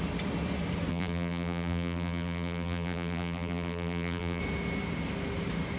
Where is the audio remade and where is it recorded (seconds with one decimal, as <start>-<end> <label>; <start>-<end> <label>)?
0.0-0.9 recorded; 0.9-4.4 remade; 4.4-5.8 recorded